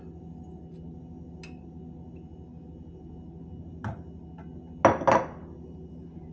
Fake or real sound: real